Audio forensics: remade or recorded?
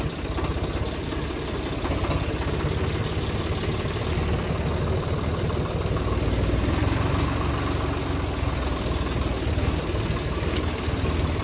recorded